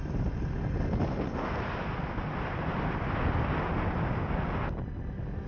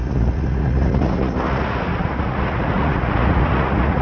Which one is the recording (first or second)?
first